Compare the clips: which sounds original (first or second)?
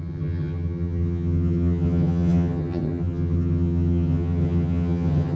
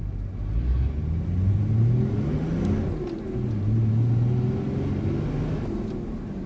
second